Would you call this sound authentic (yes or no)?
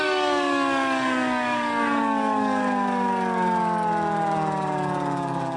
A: no